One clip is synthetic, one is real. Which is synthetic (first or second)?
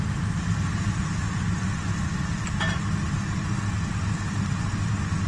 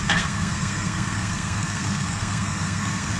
second